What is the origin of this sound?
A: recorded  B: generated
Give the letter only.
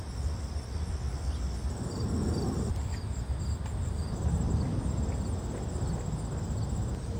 A